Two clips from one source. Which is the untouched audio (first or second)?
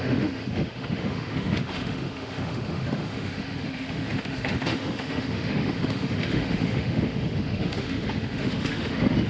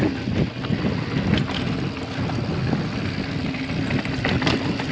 second